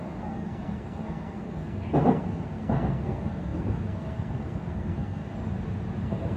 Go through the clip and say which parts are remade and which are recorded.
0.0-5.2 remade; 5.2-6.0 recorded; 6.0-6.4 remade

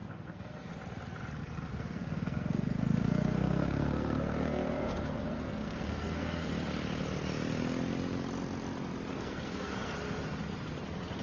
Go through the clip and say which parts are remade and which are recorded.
0.0-0.7 remade; 0.7-1.4 recorded; 1.4-6.5 remade; 6.5-9.1 recorded; 9.1-9.9 remade; 9.9-11.2 recorded

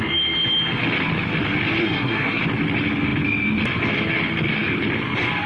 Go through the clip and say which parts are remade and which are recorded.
0.0-1.8 recorded; 1.8-2.4 remade; 2.4-5.5 recorded

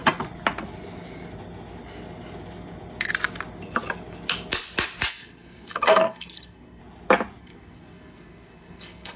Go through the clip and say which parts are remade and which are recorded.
0.0-5.1 recorded; 5.1-6.8 remade; 6.8-7.4 recorded; 7.4-9.2 remade

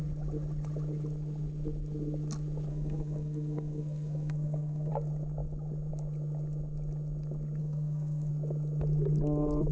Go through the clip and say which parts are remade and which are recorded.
0.0-2.7 recorded; 2.7-4.9 remade; 4.9-7.6 recorded; 7.6-8.3 remade; 8.3-9.7 recorded